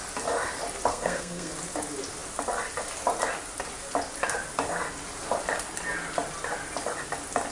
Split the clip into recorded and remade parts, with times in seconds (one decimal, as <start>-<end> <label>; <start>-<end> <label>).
0.0-0.9 recorded; 0.9-1.5 remade; 1.5-7.5 recorded